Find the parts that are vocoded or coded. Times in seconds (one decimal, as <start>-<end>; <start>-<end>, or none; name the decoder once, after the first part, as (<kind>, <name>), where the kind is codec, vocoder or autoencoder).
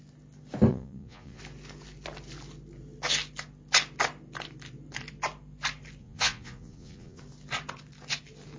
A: 0.7-1.4 (vocoder, Vocos); 6.0-7.2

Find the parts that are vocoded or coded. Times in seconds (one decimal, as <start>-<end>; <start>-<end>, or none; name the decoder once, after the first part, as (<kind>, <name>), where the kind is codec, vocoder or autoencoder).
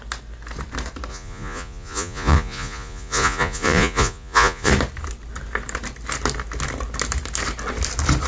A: 1.1-4.7 (vocoder, Vocos)